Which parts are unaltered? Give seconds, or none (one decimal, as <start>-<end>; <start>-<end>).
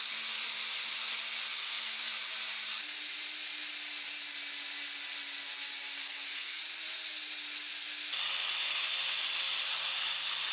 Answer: 0.0-1.5; 2.1-6.0; 6.6-10.5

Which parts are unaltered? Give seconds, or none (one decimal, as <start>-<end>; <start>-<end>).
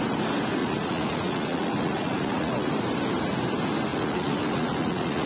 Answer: 0.0-0.6; 2.7-3.9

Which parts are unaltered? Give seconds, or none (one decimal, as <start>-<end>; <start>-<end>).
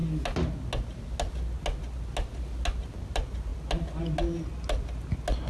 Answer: 0.0-5.5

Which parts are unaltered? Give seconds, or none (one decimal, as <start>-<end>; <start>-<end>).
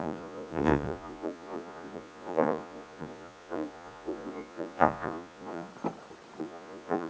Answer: 5.7-6.4